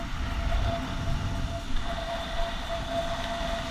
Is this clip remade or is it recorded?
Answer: recorded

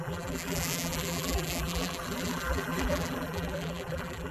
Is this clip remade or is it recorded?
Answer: remade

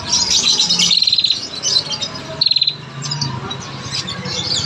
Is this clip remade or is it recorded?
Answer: recorded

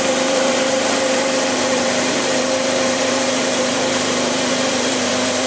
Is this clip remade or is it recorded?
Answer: remade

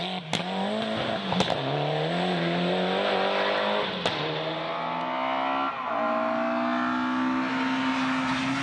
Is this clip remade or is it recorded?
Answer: recorded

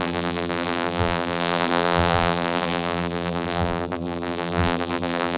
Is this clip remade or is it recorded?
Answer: remade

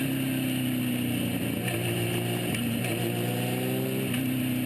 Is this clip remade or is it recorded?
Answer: recorded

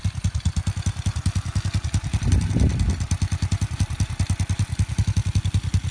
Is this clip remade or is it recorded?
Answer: recorded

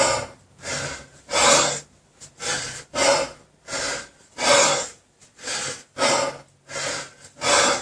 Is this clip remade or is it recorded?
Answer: recorded